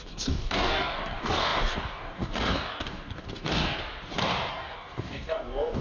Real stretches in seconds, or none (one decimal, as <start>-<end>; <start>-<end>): 3.8-4.5